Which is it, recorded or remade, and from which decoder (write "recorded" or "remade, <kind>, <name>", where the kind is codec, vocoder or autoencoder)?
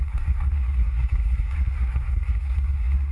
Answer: remade, codec, SNAC